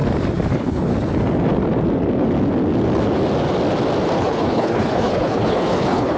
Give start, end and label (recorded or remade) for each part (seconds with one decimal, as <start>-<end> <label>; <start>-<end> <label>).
0.0-0.5 recorded; 0.5-0.9 remade; 0.9-4.2 recorded; 4.2-6.2 remade